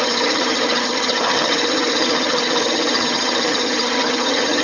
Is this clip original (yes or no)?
no